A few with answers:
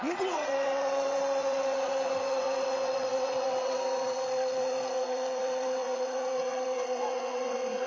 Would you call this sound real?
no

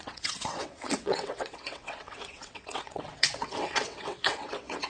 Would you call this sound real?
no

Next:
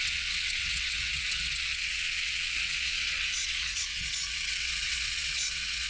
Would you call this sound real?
no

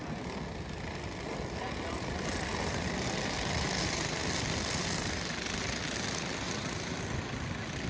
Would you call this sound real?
yes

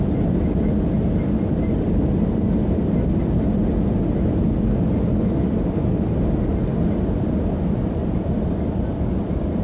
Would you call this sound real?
yes